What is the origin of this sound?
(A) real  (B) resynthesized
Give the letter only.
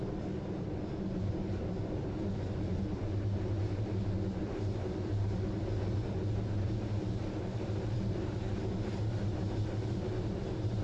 A